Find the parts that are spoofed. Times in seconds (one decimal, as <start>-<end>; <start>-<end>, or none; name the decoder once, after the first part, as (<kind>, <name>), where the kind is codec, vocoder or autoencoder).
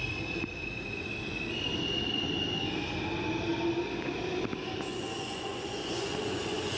4.9-6.8 (vocoder, Vocos)